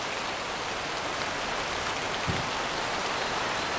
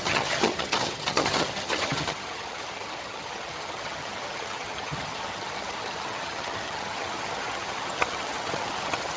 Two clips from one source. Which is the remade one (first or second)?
second